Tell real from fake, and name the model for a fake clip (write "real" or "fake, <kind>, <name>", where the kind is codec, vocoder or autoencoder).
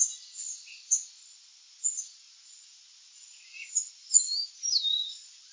real